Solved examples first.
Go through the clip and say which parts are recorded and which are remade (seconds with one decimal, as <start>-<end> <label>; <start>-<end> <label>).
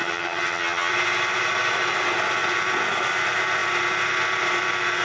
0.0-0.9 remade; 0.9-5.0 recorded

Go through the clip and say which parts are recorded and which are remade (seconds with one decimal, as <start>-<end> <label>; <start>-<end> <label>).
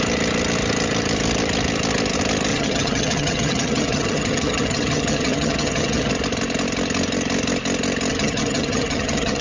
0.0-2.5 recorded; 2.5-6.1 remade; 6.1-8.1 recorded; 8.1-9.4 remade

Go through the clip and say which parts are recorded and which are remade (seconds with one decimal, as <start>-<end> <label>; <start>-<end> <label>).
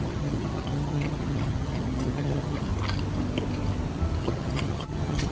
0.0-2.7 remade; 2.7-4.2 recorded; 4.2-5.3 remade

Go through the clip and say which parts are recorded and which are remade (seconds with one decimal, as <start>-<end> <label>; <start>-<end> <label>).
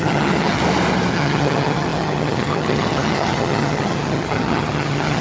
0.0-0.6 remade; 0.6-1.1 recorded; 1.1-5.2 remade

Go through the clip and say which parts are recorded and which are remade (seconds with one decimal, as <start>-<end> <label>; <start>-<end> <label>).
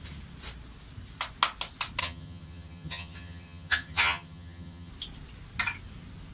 0.0-2.0 recorded; 2.0-4.9 remade; 4.9-6.3 recorded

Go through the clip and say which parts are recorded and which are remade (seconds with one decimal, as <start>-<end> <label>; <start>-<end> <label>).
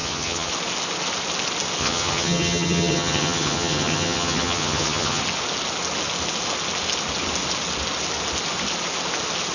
0.0-0.5 remade; 0.5-1.8 recorded; 1.8-5.2 remade; 5.2-9.5 recorded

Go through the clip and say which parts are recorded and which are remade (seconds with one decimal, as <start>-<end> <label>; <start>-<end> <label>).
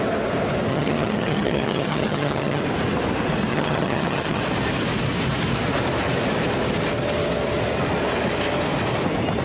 0.0-0.7 recorded; 0.7-2.6 remade; 2.6-3.5 recorded; 3.5-4.4 remade; 4.4-9.4 recorded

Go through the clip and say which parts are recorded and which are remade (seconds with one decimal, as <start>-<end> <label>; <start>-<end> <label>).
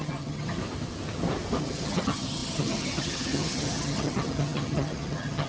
0.0-0.6 remade; 0.6-1.6 recorded; 1.6-5.5 remade